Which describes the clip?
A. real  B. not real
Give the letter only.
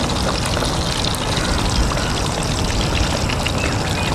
A